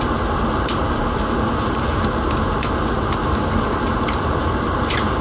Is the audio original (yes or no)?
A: no